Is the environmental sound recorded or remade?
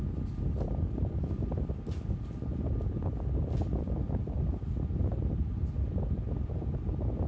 recorded